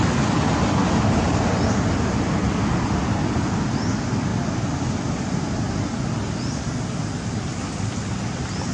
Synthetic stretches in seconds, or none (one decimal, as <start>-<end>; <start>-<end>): none

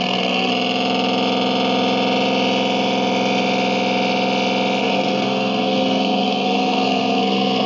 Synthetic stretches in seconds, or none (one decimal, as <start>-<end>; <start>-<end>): 0.0-0.5; 4.8-7.7

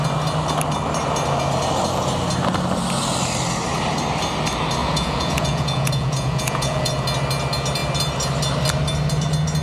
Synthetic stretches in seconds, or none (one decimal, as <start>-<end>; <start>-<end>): 4.8-6.9

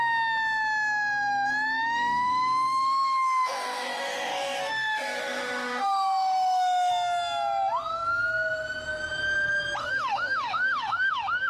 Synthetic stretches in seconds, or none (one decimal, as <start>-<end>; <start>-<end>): 1.8-6.9; 9.8-11.5